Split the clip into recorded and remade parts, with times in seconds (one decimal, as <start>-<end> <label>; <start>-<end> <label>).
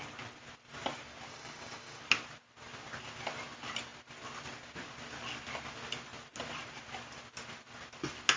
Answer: 0.0-1.3 recorded; 1.3-2.0 remade; 2.0-8.4 recorded